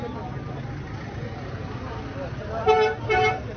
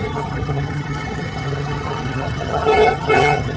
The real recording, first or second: first